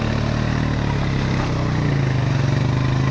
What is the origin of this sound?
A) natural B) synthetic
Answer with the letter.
A